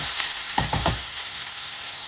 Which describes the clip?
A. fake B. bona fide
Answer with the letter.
A